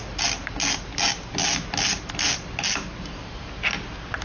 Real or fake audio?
real